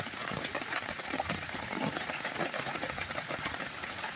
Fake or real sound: fake